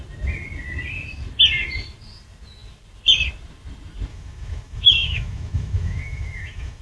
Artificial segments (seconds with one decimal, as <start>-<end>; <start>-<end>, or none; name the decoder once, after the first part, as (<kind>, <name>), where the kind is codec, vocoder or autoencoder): 4.1-6.8 (autoencoder, DAC-VAE)